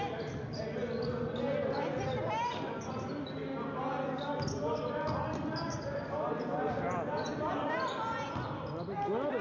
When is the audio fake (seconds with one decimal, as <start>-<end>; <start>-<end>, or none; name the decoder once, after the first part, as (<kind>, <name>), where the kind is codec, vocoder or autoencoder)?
none